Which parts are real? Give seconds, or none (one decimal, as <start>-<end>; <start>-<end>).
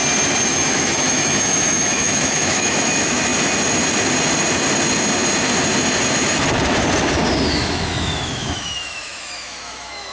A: 0.0-0.5; 3.3-7.5